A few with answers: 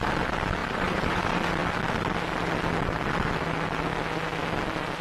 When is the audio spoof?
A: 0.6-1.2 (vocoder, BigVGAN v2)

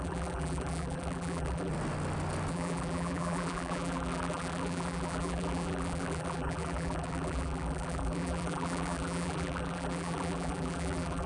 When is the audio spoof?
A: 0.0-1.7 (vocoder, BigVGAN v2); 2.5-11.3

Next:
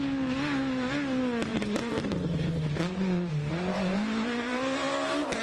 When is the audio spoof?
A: 1.5-2.1 (vocoder, BigVGAN v2); 3.9-5.4

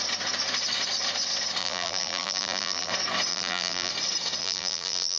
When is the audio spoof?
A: 1.6-2.9 (vocoder, BigVGAN v2); 3.3-3.9; 4.4-5.2